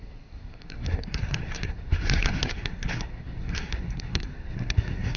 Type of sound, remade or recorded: remade